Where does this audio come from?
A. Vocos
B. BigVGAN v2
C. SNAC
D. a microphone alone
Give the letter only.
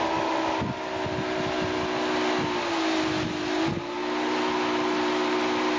D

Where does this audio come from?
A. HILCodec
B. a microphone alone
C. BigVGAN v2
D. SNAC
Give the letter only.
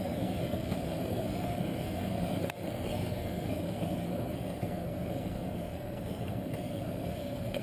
D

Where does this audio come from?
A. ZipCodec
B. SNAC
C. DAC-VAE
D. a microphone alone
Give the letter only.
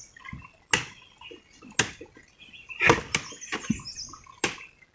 D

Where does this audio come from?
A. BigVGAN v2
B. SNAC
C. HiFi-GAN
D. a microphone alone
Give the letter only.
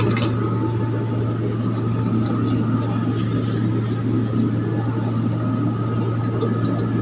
D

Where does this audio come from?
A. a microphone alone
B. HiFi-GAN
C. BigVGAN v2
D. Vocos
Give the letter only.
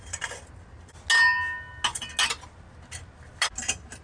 A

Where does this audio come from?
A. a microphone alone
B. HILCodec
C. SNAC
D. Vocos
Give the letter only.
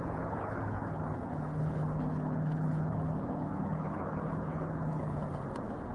B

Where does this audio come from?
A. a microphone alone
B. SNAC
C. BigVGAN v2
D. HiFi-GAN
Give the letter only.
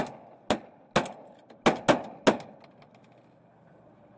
A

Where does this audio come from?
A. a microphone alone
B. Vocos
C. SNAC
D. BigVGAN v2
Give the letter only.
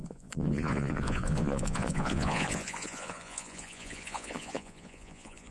B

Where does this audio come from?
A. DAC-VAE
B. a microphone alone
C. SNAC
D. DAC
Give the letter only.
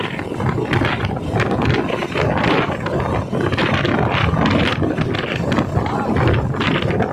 B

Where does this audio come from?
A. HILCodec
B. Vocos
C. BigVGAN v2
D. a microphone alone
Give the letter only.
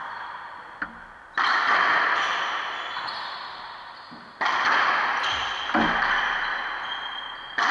D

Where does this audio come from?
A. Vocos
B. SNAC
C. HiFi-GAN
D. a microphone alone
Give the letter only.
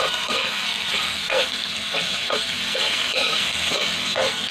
B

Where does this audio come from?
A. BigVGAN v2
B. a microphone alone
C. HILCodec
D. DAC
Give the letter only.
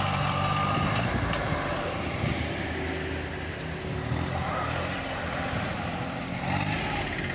B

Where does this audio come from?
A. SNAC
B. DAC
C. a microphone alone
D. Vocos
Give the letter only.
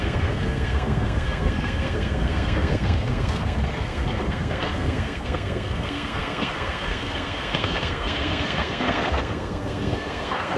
A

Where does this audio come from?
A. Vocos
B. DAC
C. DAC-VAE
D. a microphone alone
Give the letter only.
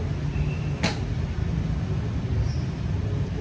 D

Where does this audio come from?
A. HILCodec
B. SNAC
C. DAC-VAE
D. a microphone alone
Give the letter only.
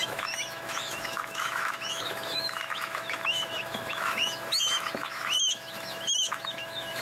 C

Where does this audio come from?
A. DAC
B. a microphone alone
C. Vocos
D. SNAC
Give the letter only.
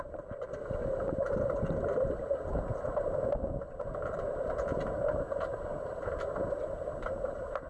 B